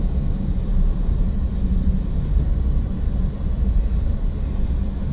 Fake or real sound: fake